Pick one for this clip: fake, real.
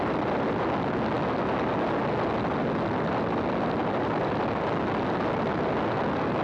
real